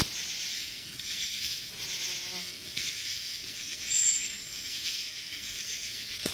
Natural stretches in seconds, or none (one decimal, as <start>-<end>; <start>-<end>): 0.0-0.5; 1.7-2.4